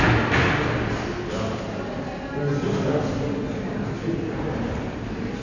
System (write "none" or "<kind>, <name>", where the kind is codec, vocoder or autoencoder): none